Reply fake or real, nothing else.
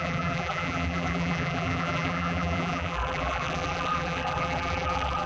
fake